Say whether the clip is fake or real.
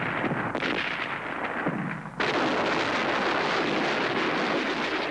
real